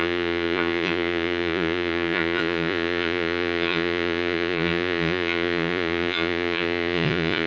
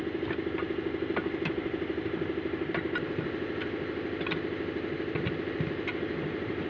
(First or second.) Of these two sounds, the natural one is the second